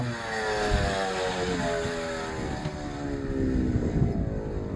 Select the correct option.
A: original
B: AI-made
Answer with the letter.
A